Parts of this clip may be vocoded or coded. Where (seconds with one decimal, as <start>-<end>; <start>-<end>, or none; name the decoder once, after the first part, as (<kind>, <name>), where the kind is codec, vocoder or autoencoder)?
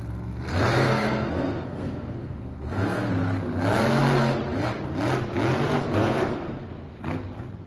0.5-3.1 (codec, SNAC); 5.8-6.7